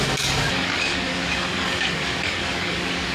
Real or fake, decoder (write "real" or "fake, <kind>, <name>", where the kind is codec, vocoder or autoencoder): fake, codec, DAC